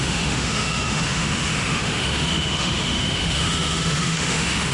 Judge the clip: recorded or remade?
remade